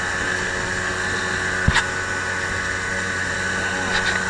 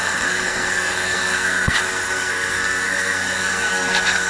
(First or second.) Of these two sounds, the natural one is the first